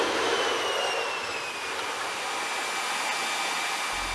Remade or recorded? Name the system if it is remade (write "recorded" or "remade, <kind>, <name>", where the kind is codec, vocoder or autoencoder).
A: recorded